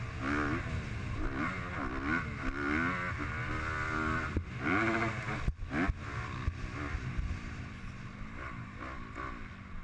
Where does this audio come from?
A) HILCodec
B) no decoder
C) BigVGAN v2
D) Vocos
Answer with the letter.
B